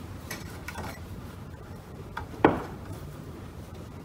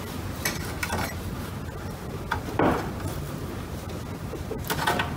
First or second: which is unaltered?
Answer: second